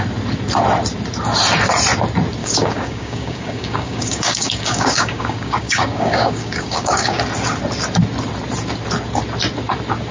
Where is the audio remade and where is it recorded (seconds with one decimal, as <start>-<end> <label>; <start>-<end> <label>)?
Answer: 0.0-2.4 recorded; 2.4-7.2 remade; 7.2-10.1 recorded